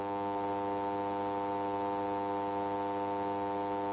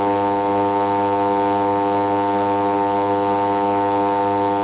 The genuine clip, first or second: first